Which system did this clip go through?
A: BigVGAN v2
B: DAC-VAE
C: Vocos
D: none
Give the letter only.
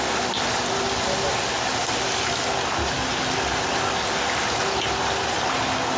D